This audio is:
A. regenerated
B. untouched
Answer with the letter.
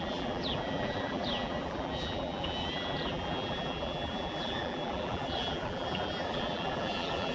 A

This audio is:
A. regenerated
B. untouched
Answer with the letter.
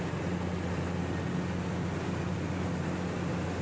B